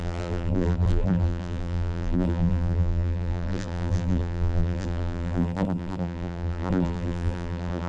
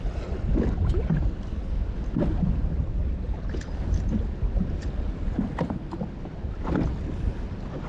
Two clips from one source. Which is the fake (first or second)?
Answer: first